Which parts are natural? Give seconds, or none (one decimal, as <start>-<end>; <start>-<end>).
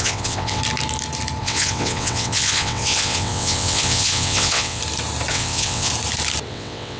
0.6-1.4; 4.8-5.3; 5.9-6.5